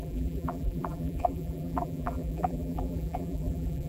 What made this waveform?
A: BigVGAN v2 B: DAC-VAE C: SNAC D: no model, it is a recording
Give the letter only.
A